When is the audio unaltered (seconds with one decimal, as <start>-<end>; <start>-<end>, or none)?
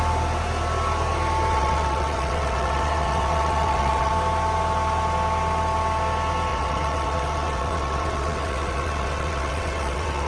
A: 0.0-1.5; 4.1-6.5